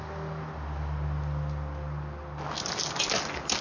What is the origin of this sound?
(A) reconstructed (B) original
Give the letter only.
B